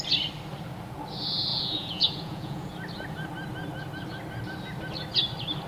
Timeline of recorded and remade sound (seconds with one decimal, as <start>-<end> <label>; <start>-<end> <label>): 0.0-1.5 recorded; 1.5-2.7 remade; 2.7-5.7 recorded